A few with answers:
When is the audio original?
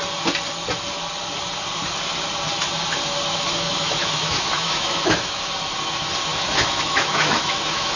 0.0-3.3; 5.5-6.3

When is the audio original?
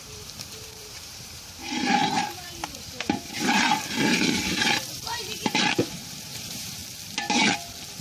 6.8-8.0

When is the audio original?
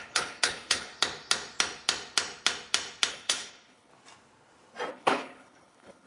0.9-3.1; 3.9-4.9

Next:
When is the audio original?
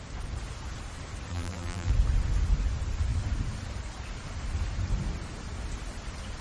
0.0-1.3; 1.9-6.4